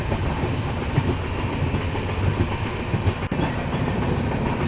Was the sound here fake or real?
real